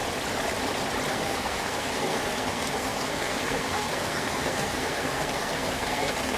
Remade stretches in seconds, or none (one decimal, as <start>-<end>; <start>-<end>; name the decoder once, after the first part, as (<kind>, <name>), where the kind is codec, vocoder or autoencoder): 1.1-6.4 (codec, SNAC)